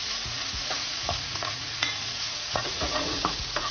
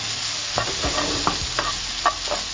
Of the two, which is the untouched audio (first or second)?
second